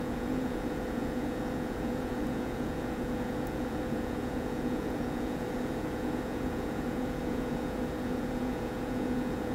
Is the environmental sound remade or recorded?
remade